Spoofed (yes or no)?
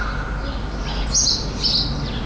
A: no